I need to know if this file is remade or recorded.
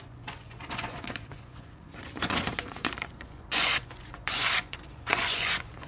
remade